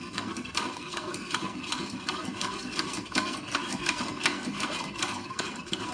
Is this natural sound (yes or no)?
no